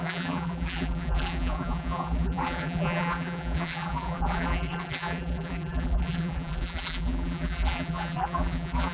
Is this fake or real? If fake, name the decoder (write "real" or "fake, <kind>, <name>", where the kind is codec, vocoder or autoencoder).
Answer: fake, vocoder, BigVGAN v2